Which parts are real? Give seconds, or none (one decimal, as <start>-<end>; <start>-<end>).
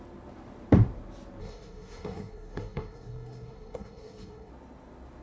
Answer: 0.0-1.4; 4.5-5.2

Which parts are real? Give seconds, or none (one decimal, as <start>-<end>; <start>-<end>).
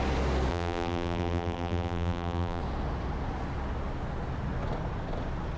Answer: 0.0-0.5; 2.6-5.6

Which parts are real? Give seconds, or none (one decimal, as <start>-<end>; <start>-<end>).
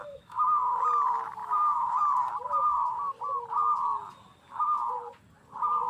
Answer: 0.7-1.4; 2.0-5.9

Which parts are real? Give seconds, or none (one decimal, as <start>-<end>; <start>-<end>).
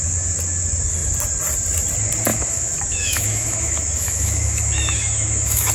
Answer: 0.0-2.3